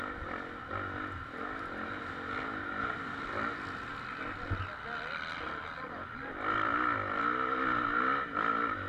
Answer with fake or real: real